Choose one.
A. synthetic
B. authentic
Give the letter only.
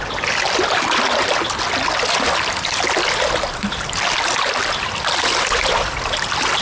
B